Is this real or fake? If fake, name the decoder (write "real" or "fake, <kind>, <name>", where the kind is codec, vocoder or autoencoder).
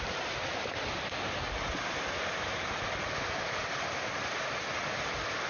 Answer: real